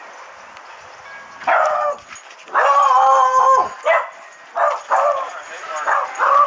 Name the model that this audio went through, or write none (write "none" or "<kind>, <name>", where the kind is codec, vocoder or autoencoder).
none